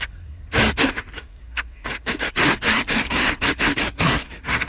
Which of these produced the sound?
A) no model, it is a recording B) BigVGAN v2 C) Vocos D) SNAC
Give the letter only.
D